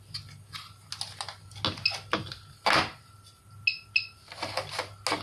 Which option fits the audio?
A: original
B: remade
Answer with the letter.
A